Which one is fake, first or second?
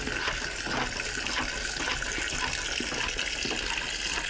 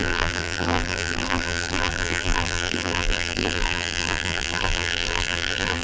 second